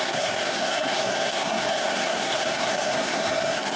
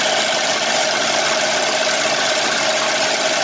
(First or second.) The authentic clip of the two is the second